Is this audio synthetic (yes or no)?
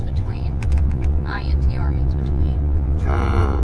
yes